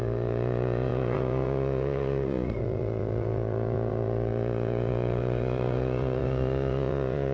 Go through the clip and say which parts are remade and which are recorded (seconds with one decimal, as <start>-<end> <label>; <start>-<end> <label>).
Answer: 0.0-7.3 remade